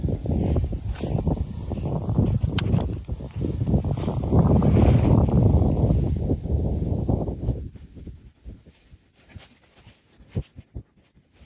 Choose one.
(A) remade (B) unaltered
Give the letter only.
B